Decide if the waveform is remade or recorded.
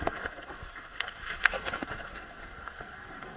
remade